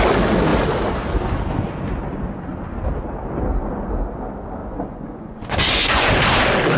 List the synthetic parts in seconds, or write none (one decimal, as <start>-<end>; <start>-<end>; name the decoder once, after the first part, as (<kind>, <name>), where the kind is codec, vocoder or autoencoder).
4.6-6.1 (vocoder, Vocos)